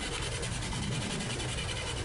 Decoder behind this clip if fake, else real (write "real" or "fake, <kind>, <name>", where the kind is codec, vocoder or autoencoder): real